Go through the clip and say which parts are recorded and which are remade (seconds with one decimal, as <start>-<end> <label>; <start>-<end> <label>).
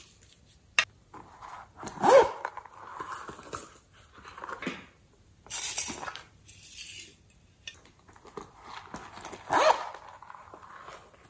0.0-11.3 recorded